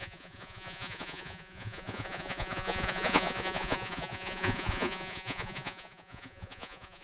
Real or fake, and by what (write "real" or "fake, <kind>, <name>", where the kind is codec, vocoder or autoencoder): fake, vocoder, Vocos